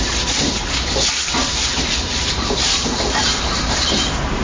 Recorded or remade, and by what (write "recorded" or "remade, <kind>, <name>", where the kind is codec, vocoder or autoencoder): remade, vocoder, BigVGAN v2